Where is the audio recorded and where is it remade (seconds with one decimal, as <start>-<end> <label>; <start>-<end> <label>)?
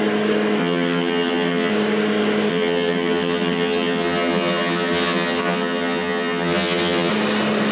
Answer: 0.0-0.6 recorded; 0.6-1.7 remade; 1.7-2.5 recorded; 2.5-7.1 remade; 7.1-7.7 recorded